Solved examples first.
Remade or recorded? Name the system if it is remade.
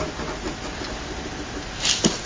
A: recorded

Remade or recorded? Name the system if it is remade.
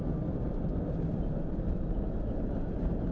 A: recorded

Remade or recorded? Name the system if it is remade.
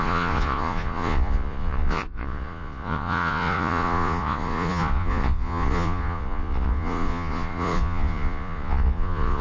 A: remade, vocoder, Vocos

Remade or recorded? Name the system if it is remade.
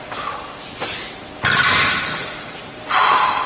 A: recorded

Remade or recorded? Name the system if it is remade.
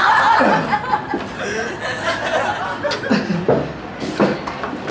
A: recorded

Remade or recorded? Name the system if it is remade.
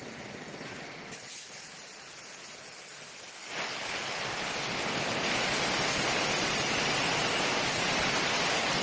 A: recorded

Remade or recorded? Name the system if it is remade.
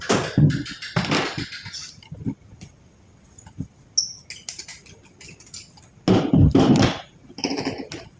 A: recorded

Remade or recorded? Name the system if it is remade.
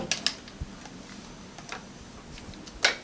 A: recorded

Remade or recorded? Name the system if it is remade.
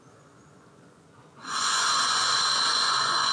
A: remade, vocoder, Vocos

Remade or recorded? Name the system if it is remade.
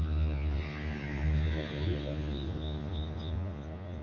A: remade, vocoder, Vocos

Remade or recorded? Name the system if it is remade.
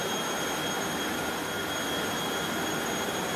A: recorded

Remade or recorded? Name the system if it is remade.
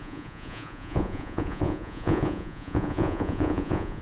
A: remade, vocoder, Vocos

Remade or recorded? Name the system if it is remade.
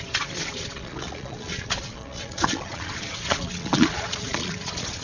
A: remade, vocoder, Vocos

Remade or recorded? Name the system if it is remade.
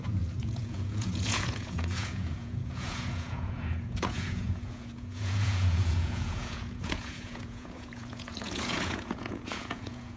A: remade, vocoder, Vocos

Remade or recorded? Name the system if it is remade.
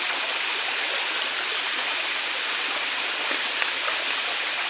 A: recorded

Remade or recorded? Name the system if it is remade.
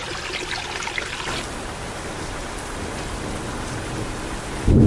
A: recorded